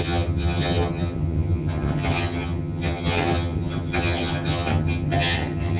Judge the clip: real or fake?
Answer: fake